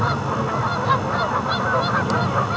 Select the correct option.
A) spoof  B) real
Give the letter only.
B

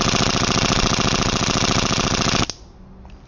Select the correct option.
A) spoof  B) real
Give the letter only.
B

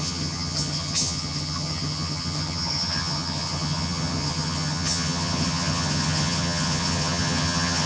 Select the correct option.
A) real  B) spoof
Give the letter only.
B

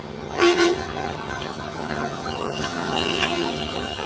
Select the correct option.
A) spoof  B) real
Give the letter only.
A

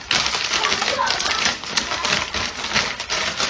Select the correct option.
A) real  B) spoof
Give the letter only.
A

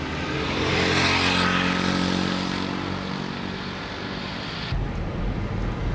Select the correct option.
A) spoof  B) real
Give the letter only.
B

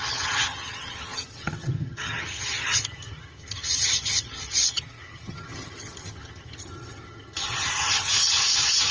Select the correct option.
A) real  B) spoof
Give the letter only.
B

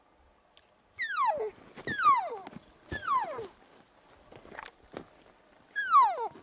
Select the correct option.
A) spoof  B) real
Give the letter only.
B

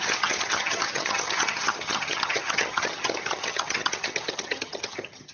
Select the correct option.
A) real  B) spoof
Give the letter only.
B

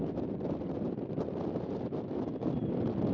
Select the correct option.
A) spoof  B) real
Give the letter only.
B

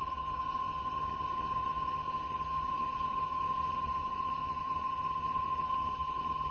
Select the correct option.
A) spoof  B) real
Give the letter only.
A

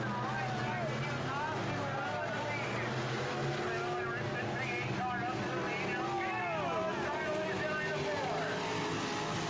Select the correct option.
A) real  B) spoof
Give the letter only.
A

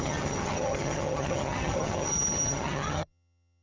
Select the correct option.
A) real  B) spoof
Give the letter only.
B